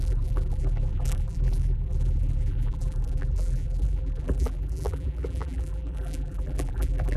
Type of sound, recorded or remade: remade